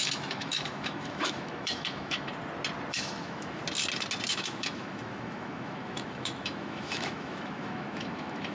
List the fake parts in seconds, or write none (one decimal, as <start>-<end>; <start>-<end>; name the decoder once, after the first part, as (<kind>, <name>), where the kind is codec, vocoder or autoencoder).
0.0-2.3 (autoencoder, DAC-VAE); 2.9-3.6; 4.3-8.5